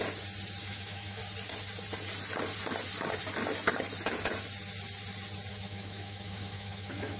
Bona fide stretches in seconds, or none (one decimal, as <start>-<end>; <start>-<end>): 0.0-0.6; 1.2-5.5